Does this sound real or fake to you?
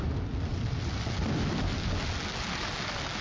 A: real